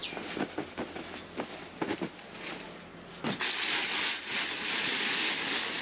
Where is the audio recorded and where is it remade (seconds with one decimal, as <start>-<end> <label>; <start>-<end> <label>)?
0.0-5.8 recorded